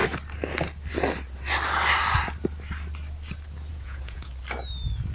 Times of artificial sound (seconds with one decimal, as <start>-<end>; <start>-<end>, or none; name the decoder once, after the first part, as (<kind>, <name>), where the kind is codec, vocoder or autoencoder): 3.7-4.3 (vocoder, Vocos)